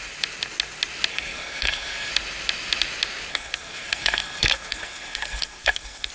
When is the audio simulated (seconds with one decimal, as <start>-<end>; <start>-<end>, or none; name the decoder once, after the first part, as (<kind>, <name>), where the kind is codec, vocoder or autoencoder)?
1.1-2.1 (codec, SNAC); 3.3-6.1